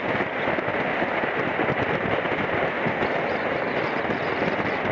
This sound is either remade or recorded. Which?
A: recorded